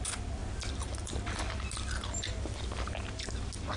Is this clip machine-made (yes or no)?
no